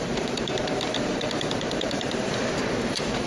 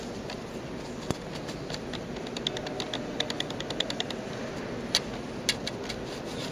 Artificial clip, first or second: first